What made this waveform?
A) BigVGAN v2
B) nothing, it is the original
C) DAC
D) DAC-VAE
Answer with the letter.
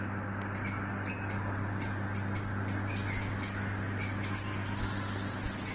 B